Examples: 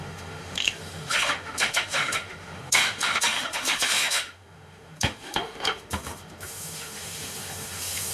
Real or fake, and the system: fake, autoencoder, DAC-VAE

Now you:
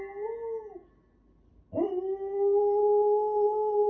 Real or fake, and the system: real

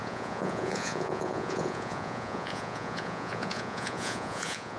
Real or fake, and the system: fake, vocoder, Vocos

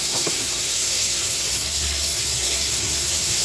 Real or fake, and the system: fake, codec, SNAC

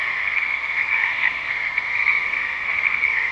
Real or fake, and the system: fake, codec, SNAC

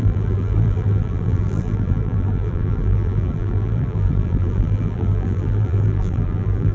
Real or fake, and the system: fake, vocoder, BigVGAN v2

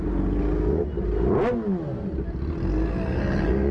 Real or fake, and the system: real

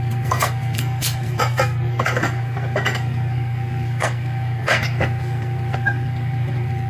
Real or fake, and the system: fake, codec, SNAC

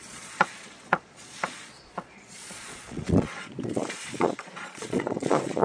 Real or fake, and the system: fake, vocoder, Vocos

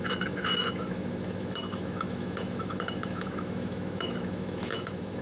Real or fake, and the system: fake, autoencoder, DAC-VAE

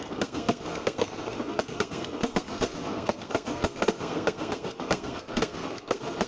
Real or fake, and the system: fake, codec, SNAC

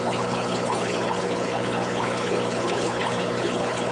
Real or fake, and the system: fake, codec, HILCodec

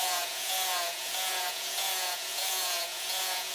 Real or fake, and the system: fake, vocoder, Vocos